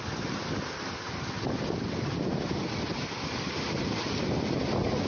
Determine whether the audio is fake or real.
real